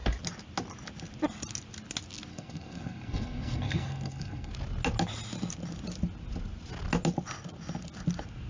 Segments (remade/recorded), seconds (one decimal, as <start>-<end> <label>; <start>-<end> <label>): 0.0-2.3 recorded; 2.3-4.5 remade; 4.5-8.5 recorded